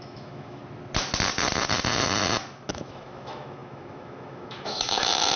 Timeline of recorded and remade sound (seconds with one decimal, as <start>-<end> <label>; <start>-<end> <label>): 0.0-0.6 remade; 0.6-2.7 recorded; 2.7-5.4 remade